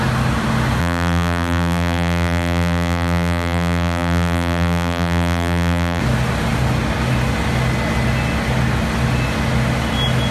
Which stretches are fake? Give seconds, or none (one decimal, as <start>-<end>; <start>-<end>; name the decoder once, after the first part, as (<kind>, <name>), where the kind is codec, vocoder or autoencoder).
0.8-6.0 (vocoder, BigVGAN v2)